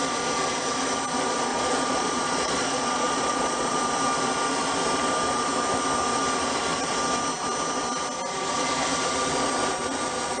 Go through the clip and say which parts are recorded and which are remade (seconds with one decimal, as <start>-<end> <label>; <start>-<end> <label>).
0.0-1.5 recorded; 1.5-3.8 remade; 3.8-10.4 recorded